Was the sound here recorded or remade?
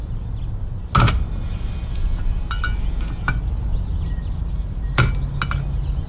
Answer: recorded